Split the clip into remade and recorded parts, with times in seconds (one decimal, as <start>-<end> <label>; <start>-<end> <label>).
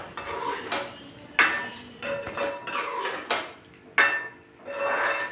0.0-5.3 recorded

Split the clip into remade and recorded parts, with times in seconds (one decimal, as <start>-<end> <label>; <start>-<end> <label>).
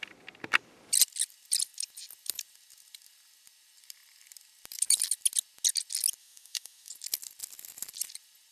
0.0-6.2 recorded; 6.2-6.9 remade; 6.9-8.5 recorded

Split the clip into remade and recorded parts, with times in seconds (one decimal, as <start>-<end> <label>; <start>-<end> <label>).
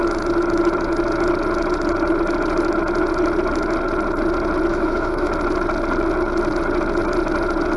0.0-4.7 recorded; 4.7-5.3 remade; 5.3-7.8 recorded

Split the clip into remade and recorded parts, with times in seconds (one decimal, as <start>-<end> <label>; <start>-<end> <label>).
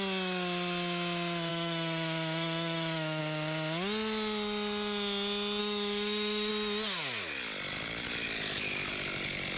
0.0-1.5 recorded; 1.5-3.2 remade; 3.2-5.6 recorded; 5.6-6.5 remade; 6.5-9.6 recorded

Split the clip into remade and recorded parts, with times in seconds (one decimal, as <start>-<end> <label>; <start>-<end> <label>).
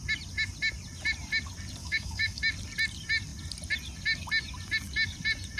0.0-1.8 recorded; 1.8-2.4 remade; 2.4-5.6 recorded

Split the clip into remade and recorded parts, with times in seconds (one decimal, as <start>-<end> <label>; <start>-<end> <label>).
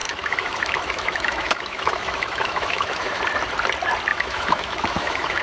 0.0-3.2 remade; 3.2-4.1 recorded; 4.1-5.4 remade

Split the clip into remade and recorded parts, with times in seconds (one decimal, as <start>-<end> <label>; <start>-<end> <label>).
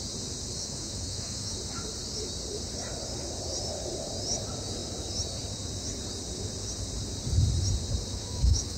0.0-0.6 recorded; 0.6-1.6 remade; 1.6-8.1 recorded; 8.1-8.8 remade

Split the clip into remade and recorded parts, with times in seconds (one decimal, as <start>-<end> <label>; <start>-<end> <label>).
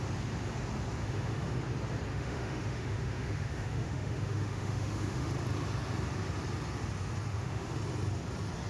0.0-1.0 recorded; 1.0-1.6 remade; 1.6-2.1 recorded; 2.1-5.3 remade; 5.3-7.3 recorded; 7.3-7.8 remade; 7.8-8.7 recorded